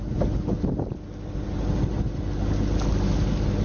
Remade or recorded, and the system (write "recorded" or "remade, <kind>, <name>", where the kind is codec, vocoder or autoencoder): recorded